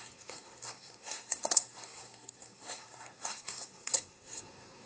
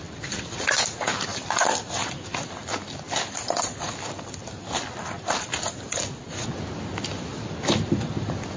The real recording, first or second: second